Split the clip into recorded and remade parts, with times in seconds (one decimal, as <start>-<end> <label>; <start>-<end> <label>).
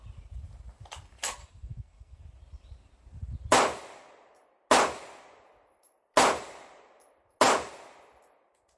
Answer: 0.0-1.4 recorded; 1.4-2.2 remade; 2.2-8.8 recorded